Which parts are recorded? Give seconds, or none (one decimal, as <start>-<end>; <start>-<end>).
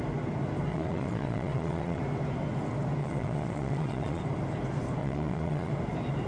0.0-0.7; 2.0-3.0; 4.2-5.0; 5.7-6.3